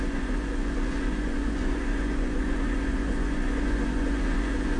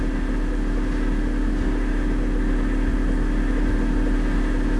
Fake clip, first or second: first